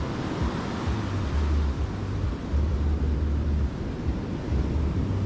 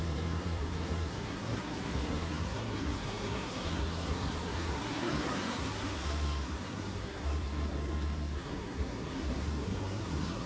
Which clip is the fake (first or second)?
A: second